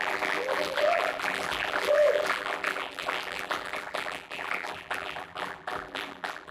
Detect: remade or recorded remade